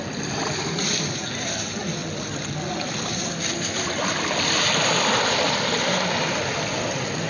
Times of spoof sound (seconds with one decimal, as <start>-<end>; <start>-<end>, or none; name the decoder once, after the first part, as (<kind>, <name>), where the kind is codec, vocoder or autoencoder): none